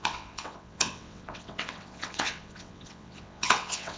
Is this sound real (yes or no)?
no